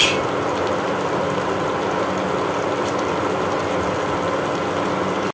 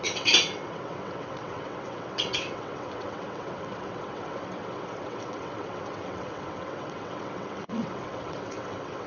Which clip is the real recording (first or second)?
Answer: first